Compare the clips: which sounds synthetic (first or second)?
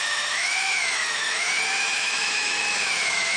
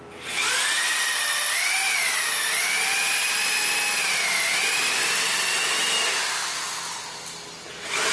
first